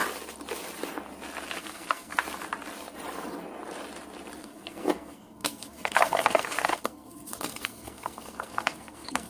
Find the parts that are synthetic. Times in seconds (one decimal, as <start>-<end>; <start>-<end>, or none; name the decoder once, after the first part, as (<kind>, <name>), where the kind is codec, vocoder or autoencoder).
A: 1.6-2.2 (codec, SNAC); 4.4-9.3

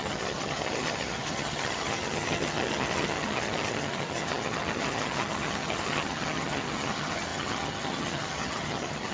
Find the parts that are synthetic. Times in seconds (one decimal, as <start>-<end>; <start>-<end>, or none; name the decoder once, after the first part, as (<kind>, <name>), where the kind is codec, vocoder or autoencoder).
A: 0.0-9.1 (vocoder, HiFi-GAN)

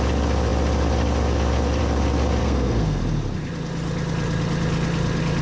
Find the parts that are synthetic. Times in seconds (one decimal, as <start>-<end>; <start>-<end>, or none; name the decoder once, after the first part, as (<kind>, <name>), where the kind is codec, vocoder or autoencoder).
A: 2.4-3.0 (codec, SNAC)

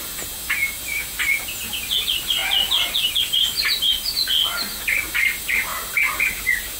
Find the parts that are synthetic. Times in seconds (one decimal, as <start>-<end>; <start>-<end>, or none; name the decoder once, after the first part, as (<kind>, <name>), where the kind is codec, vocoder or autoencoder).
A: none

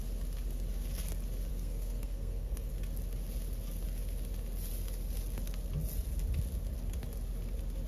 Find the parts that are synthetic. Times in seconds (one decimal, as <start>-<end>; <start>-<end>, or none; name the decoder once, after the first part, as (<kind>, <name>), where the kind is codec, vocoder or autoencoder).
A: 1.5-2.7 (codec, SNAC)

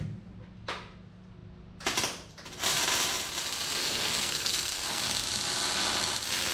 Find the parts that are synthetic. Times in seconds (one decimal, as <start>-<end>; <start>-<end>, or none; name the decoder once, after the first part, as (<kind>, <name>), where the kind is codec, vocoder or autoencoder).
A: 3.8-5.0 (codec, SNAC)

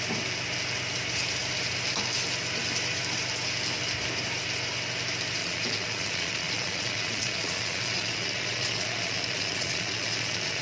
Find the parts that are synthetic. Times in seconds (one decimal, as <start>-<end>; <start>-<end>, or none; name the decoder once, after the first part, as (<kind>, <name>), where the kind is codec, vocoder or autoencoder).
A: 5.4-10.6 (vocoder, Vocos)